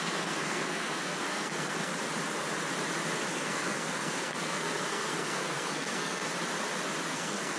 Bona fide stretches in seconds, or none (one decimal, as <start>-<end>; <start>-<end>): 1.9-3.3; 6.3-7.1